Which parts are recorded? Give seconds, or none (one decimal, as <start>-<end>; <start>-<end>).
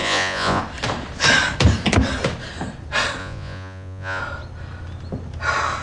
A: 0.6-3.2; 4.2-5.8